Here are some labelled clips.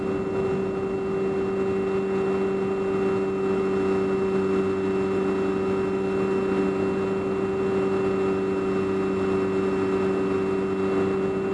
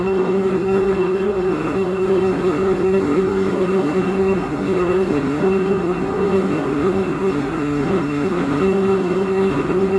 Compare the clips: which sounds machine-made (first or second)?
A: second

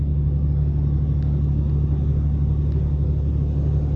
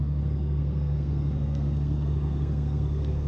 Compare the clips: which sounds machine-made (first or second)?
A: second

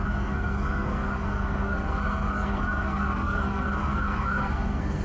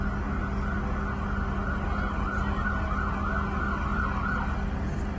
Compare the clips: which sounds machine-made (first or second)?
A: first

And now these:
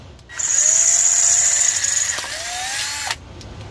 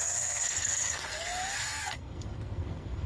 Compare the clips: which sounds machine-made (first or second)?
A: second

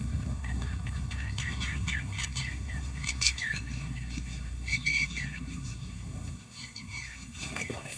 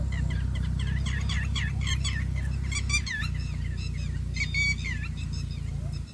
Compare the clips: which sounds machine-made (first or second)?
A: first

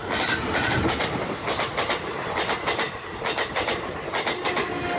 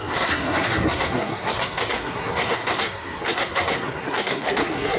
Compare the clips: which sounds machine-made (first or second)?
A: second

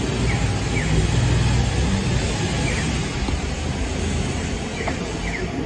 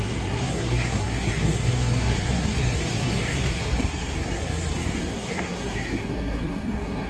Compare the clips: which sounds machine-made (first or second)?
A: second